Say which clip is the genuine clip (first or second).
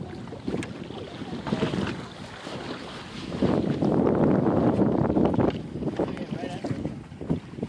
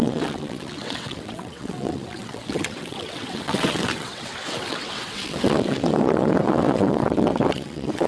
first